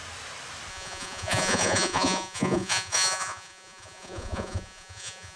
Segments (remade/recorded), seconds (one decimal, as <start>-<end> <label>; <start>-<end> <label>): 0.0-0.7 recorded; 0.7-5.4 remade